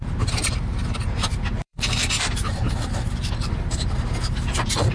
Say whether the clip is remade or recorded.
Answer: remade